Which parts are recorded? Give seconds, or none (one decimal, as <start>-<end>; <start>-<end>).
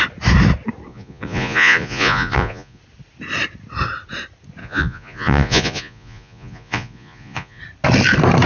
0.0-0.9; 2.8-4.6; 7.6-8.5